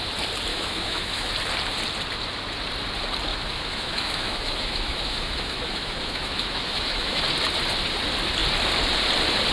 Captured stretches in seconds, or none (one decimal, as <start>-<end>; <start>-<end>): 0.0-0.5; 1.3-3.3; 7.2-9.5